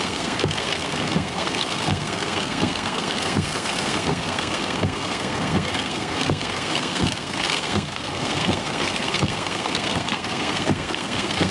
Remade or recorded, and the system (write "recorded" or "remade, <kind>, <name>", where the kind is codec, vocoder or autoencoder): remade, codec, SNAC